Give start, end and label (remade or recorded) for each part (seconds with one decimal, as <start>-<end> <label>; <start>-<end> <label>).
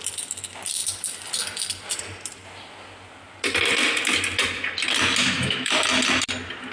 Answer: 0.0-5.2 recorded; 5.2-5.7 remade; 5.7-6.7 recorded